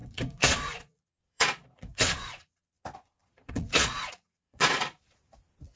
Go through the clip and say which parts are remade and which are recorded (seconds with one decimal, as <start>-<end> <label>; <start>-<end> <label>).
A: 0.0-5.8 remade